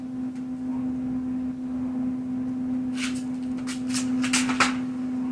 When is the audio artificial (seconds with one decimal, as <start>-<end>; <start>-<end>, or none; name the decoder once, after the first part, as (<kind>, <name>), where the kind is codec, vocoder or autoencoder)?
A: none